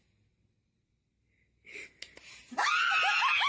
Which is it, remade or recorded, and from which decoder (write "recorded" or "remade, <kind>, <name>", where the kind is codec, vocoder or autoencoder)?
recorded